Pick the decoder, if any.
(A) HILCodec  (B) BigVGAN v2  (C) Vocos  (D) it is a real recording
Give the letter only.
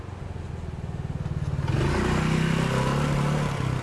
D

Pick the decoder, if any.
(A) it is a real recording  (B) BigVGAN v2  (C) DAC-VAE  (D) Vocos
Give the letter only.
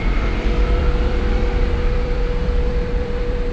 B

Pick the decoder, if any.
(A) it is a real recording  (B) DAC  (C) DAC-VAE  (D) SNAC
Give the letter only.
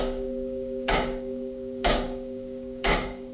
B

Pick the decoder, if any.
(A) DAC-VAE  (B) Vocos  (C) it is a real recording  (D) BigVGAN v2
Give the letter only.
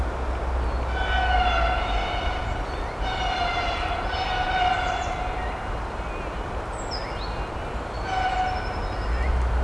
C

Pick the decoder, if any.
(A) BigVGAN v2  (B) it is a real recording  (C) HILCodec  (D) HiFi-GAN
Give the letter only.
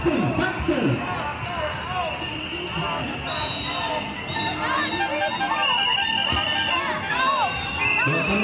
B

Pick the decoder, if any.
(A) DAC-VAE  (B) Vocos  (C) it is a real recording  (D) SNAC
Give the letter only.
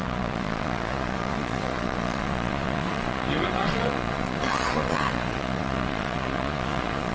B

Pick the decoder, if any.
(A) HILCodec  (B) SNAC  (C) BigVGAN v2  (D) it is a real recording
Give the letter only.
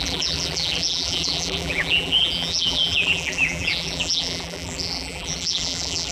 C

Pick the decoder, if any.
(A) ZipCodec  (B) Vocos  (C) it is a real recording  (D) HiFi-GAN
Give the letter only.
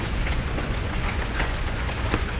B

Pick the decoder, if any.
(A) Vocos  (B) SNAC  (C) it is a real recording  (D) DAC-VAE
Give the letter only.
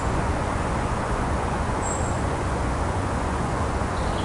A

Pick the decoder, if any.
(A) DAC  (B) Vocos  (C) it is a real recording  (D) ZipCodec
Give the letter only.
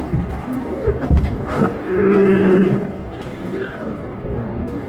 A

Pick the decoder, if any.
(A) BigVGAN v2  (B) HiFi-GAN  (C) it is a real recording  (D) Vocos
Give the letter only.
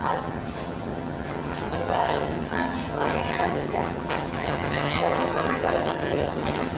B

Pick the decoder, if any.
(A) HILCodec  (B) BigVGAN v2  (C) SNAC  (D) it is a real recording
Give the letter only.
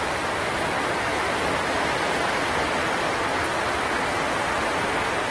B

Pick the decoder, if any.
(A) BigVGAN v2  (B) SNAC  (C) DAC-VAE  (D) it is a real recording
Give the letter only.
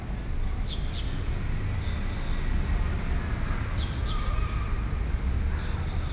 D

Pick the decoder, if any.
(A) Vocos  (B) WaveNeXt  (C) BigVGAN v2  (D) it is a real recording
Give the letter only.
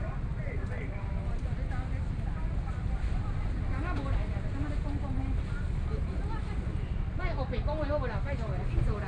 D